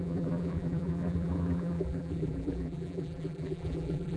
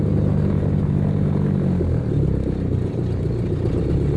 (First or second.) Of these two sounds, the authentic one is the second